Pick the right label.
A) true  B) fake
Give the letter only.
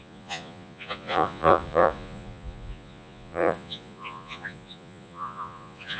B